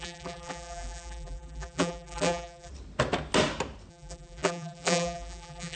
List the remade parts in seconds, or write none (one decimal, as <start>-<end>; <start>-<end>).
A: 0.0-2.7; 3.9-5.8